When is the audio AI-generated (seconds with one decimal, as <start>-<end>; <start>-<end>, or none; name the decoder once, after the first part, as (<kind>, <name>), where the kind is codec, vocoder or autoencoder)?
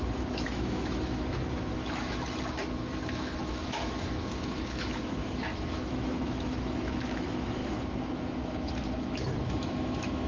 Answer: 0.0-10.3 (autoencoder, DAC-VAE)